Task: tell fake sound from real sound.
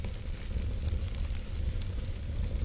real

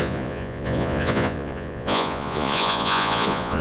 fake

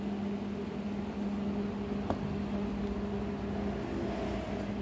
real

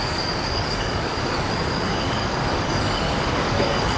fake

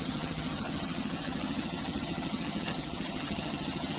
fake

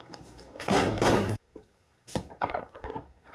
fake